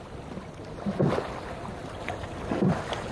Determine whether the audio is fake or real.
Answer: real